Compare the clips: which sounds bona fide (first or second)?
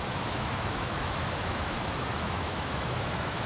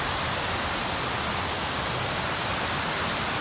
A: second